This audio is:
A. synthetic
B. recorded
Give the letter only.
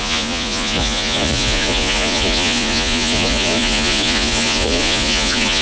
A